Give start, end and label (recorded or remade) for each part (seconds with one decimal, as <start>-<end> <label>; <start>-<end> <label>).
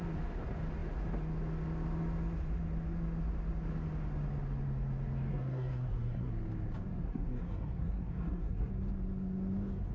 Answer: 0.0-5.3 recorded; 5.3-6.3 remade; 6.3-7.0 recorded; 7.0-8.7 remade; 8.7-9.9 recorded